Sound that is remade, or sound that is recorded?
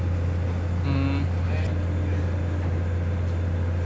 recorded